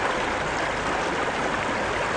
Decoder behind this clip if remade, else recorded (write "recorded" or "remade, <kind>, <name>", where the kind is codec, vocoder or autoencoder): recorded